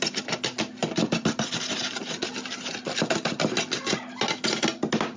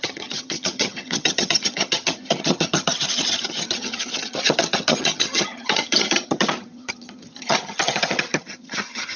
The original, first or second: first